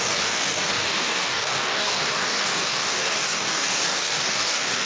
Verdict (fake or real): fake